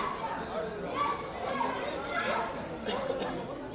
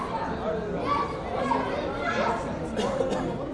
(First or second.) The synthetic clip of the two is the first